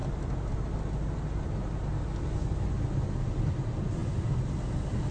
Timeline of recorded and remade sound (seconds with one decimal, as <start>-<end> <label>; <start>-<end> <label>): 0.0-5.1 recorded

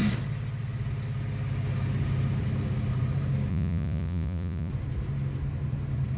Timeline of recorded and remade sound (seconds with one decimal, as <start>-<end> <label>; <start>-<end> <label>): 0.0-3.5 recorded; 3.5-4.7 remade; 4.7-6.2 recorded